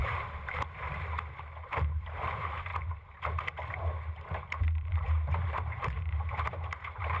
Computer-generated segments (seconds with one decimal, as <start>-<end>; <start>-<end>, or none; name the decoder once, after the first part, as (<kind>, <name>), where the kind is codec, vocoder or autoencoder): 0.0-2.7 (vocoder, BigVGAN v2); 4.1-7.2